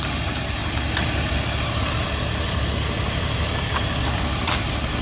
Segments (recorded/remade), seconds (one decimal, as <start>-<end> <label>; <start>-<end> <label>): 0.0-5.0 recorded